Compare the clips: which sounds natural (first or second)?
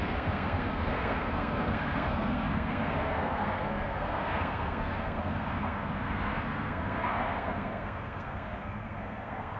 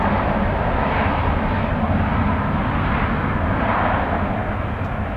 second